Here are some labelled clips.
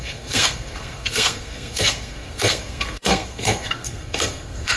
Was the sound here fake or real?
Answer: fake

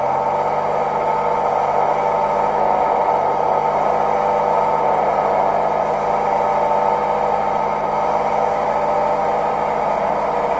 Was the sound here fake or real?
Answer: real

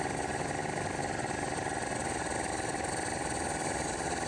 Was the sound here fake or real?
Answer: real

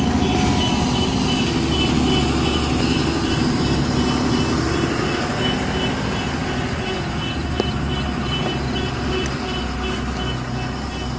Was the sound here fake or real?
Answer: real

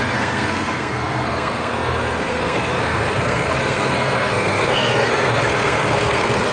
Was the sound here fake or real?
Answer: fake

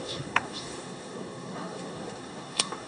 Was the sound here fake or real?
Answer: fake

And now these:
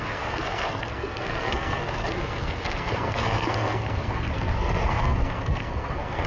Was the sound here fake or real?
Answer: fake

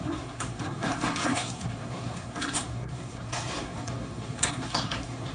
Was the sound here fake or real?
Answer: fake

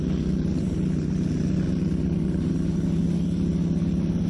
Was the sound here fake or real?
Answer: real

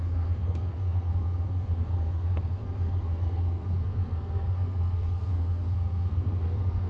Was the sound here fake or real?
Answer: fake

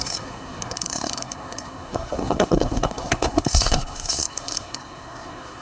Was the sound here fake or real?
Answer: fake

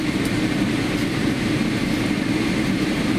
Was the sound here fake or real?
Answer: real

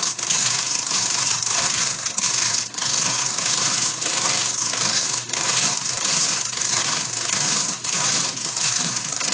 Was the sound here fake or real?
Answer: fake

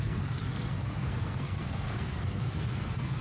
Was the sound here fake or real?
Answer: fake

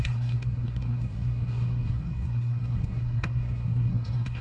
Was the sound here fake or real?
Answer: fake